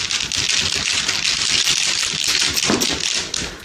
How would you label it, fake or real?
real